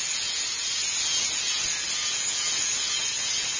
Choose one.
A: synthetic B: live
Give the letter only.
B